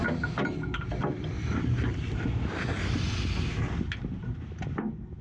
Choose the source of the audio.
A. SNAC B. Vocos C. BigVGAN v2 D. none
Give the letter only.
D